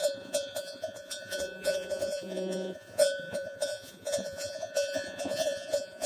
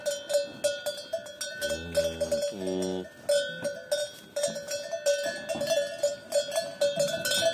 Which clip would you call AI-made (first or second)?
first